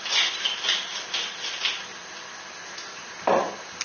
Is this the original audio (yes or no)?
yes